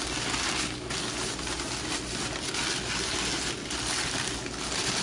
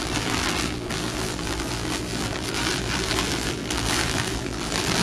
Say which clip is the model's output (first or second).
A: second